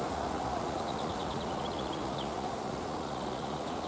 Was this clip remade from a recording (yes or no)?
yes